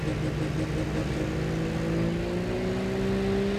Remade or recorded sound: recorded